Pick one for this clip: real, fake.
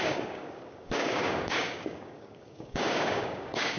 fake